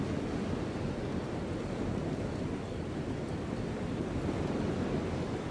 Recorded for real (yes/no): yes